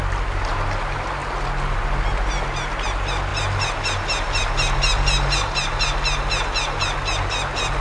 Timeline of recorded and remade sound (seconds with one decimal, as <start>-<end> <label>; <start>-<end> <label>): 0.0-7.8 recorded